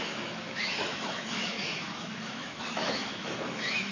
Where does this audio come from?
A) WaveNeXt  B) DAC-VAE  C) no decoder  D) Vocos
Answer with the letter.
B